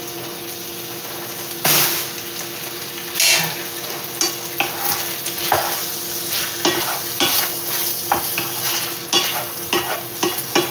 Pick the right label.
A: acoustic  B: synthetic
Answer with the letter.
A